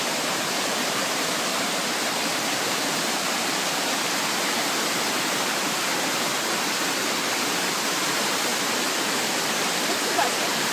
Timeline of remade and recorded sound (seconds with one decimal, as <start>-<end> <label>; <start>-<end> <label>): 0.0-6.3 remade; 6.3-7.4 recorded; 7.4-8.5 remade; 8.5-9.1 recorded; 9.1-10.7 remade